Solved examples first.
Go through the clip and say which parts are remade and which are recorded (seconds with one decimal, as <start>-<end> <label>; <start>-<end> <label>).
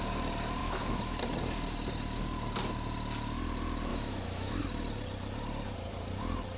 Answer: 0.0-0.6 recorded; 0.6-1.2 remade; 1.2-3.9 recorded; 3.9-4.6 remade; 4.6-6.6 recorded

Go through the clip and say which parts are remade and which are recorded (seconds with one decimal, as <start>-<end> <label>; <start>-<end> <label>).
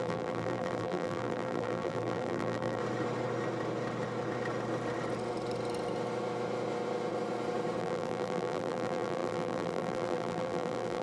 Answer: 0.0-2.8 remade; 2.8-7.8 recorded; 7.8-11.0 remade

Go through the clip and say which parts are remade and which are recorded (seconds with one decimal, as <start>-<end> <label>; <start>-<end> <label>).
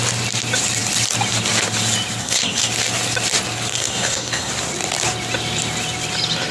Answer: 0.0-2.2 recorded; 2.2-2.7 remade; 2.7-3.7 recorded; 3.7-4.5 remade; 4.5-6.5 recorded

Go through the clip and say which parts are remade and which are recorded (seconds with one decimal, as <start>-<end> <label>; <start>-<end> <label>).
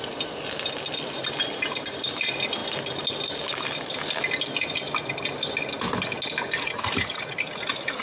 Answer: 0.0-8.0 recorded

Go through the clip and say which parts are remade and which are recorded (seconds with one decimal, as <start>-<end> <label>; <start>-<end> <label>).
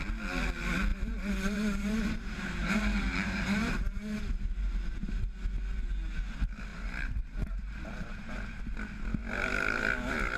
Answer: 0.0-0.9 recorded; 0.9-5.2 remade; 5.2-6.7 recorded; 6.7-8.3 remade; 8.3-10.4 recorded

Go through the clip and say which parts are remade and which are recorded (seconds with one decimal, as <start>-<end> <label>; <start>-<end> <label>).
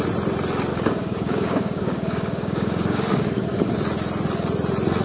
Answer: 0.0-0.7 recorded; 0.7-3.7 remade; 3.7-5.0 recorded